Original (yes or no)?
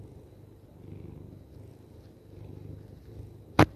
yes